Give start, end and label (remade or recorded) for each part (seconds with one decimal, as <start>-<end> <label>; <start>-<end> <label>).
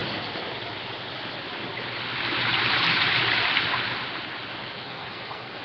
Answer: 0.0-4.6 recorded; 4.6-5.6 remade